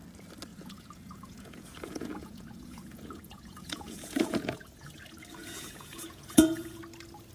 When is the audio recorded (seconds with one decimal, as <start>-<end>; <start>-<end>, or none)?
0.0-0.5; 4.9-5.4; 6.8-7.3